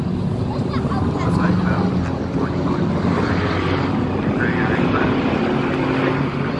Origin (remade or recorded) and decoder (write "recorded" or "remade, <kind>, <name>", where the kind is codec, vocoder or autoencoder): recorded